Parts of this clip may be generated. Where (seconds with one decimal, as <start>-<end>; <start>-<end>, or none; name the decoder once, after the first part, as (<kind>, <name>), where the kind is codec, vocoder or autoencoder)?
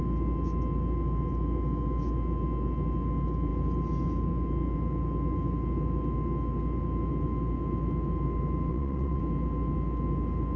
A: 8.7-9.2 (vocoder, WaveNeXt)